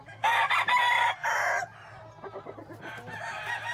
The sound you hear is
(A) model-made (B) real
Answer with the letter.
B